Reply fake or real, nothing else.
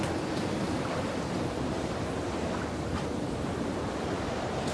real